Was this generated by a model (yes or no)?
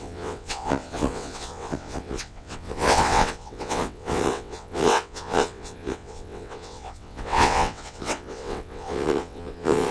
yes